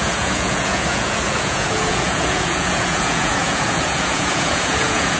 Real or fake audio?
fake